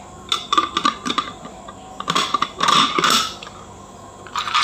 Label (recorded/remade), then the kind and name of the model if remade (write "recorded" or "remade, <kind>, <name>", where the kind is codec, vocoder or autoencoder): recorded